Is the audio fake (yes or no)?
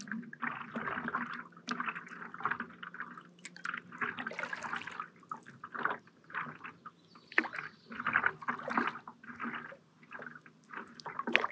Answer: no